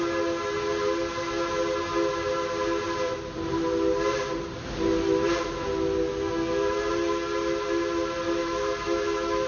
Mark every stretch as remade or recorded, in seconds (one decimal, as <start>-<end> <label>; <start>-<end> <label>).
0.0-6.1 recorded; 6.1-6.9 remade; 6.9-8.4 recorded; 8.4-9.5 remade